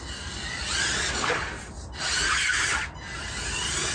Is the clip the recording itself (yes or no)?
yes